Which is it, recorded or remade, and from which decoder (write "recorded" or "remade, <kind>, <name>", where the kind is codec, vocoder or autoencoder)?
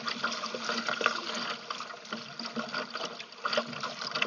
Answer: recorded